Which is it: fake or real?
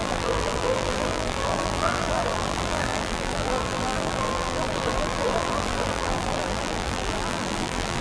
fake